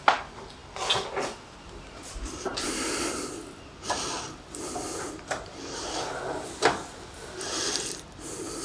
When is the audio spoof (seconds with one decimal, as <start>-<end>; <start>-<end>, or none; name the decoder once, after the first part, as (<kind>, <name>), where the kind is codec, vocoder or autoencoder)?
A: none